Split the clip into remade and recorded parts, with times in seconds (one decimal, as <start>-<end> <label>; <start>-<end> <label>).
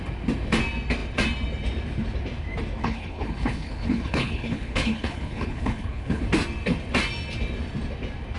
0.0-2.8 recorded; 2.8-6.2 remade; 6.2-8.4 recorded